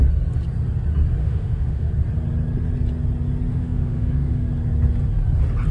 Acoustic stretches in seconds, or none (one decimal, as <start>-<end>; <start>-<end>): 0.0-1.2; 1.9-3.5; 4.5-5.7